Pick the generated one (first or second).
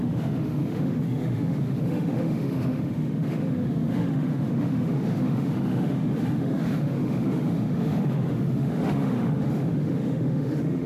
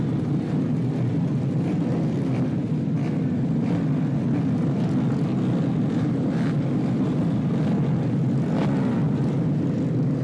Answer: first